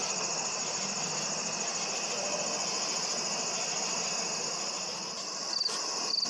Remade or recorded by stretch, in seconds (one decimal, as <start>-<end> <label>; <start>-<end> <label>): 0.0-6.3 recorded